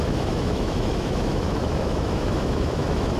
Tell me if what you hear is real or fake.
fake